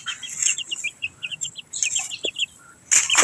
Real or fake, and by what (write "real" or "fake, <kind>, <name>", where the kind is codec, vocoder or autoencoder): real